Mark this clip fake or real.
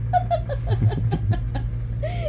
real